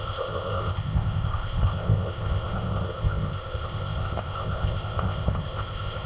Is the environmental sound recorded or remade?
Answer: remade